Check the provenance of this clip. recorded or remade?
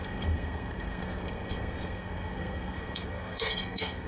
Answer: remade